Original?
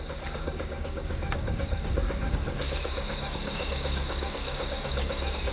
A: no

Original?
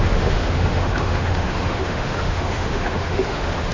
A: no